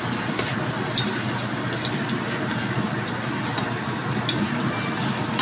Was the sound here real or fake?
real